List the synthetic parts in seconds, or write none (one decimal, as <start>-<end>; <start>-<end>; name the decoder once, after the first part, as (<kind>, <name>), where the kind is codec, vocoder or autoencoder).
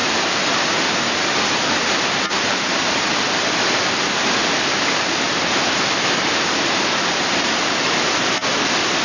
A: none